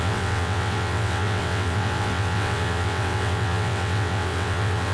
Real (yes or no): no